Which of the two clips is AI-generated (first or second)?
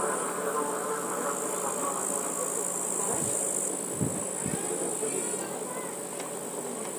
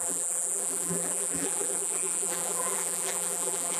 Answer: second